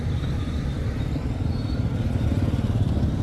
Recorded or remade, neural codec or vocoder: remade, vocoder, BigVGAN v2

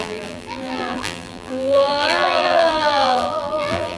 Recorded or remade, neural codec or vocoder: remade, vocoder, BigVGAN v2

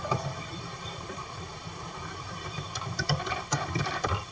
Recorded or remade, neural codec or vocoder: remade, vocoder, BigVGAN v2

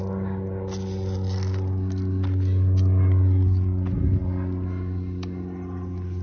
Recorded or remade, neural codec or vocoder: recorded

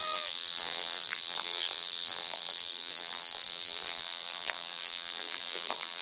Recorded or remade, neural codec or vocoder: remade, vocoder, BigVGAN v2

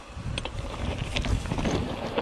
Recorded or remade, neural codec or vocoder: recorded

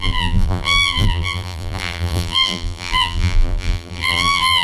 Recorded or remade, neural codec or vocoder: remade, vocoder, BigVGAN v2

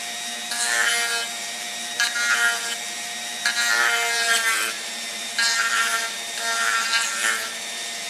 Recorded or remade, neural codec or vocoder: remade, vocoder, BigVGAN v2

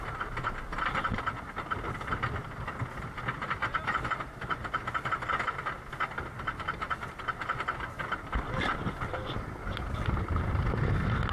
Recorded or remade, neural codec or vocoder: recorded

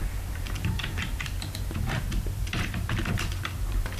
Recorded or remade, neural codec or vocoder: remade, vocoder, BigVGAN v2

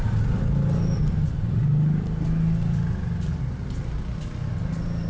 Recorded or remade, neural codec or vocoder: recorded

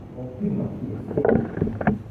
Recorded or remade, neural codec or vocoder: recorded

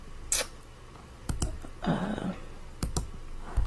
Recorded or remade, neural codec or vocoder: recorded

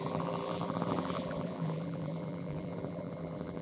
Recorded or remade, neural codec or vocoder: remade, vocoder, BigVGAN v2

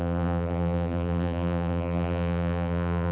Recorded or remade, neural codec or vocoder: remade, vocoder, BigVGAN v2